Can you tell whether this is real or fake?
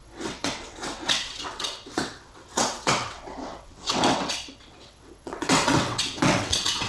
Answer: fake